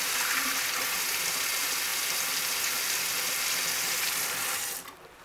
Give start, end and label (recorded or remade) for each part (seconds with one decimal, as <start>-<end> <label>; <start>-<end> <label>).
0.0-5.2 recorded